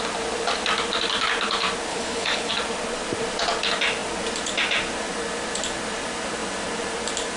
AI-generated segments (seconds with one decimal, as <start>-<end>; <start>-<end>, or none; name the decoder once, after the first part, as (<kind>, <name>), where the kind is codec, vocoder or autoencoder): 1.9-2.5 (codec, HILCodec)